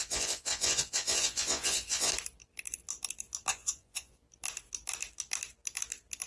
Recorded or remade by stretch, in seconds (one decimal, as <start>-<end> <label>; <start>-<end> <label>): 0.0-2.1 remade; 2.1-3.5 recorded; 3.5-4.2 remade; 4.2-6.3 recorded